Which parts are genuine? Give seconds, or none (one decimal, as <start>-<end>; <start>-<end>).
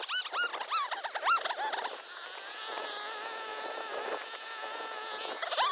0.0-5.7